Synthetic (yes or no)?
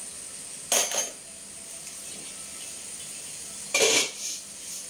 no